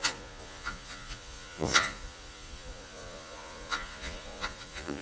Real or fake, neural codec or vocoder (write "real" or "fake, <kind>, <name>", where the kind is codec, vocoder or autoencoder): fake, vocoder, Vocos